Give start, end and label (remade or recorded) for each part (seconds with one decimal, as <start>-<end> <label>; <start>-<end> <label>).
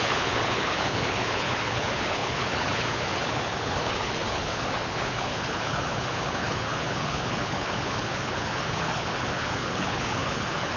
0.0-10.8 remade